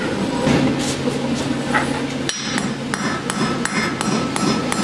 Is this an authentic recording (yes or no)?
yes